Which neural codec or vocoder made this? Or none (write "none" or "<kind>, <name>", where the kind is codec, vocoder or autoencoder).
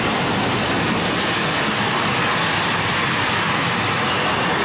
none